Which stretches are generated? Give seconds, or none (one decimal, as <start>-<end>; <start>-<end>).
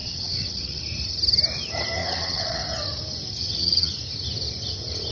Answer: 0.0-0.8; 2.0-2.6; 3.4-3.9